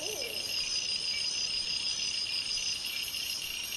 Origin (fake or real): real